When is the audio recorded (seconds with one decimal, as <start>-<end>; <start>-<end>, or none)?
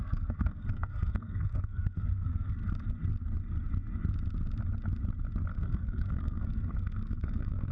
2.6-5.5